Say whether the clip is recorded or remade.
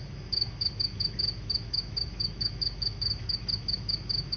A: remade